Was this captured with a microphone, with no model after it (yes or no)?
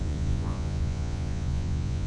no